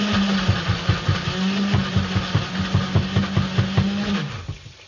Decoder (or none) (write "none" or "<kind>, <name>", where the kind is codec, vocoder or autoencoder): none